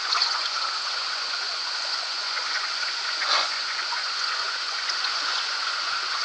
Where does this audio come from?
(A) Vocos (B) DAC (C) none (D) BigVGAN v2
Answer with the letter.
A